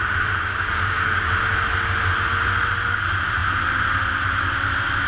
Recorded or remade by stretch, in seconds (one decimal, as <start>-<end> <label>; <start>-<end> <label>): 0.0-0.5 recorded; 0.5-1.3 remade; 1.3-5.1 recorded